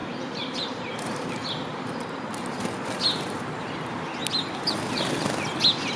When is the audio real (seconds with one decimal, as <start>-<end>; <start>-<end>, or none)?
1.4-6.0